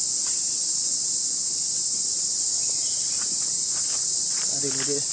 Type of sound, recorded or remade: recorded